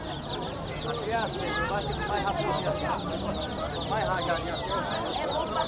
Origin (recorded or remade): recorded